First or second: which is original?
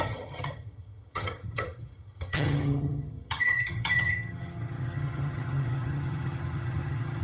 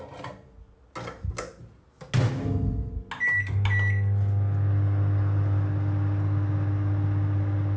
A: second